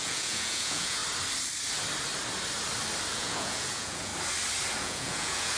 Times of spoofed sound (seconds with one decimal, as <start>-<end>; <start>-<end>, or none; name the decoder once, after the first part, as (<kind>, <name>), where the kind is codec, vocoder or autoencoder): 0.0-1.0 (vocoder, Vocos); 3.1-4.1; 4.8-5.6